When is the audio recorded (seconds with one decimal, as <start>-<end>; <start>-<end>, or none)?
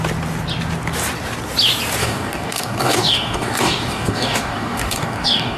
0.0-2.0